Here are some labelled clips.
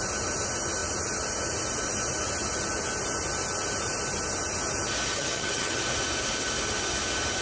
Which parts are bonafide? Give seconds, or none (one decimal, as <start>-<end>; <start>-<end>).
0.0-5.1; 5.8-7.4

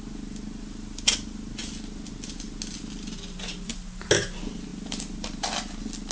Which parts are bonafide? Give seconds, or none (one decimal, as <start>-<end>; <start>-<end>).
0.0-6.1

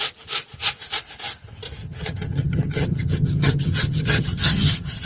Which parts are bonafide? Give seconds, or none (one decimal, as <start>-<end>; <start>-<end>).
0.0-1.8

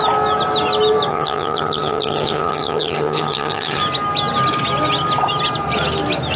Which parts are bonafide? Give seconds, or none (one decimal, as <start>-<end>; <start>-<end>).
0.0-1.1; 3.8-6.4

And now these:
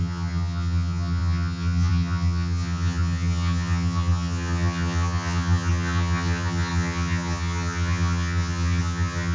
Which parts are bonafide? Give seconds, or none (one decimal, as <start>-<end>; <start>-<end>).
none